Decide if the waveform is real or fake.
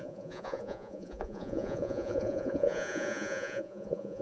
fake